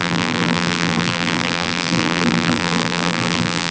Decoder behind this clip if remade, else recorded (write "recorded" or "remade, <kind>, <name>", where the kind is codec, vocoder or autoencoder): remade, vocoder, BigVGAN v2